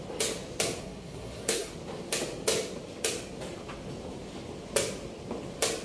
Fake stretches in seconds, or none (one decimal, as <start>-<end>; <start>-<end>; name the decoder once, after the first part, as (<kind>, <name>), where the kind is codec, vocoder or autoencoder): 0.8-1.7 (codec, SNAC)